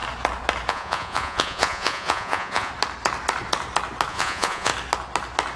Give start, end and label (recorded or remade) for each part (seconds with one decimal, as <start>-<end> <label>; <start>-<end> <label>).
0.0-0.7 recorded; 0.7-2.7 remade; 2.7-4.1 recorded; 4.1-4.7 remade; 4.7-5.6 recorded